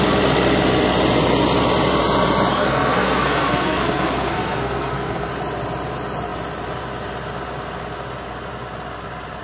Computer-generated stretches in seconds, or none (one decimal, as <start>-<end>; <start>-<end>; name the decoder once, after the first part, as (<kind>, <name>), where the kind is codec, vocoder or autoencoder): 2.5-5.3 (codec, SNAC)